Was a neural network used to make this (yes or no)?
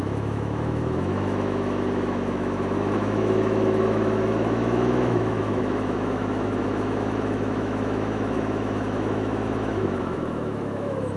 yes